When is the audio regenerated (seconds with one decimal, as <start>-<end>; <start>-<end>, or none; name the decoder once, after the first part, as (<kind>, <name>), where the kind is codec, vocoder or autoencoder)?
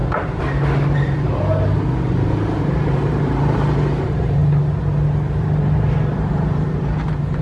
2.6-4.4 (vocoder, BigVGAN v2); 5.4-7.4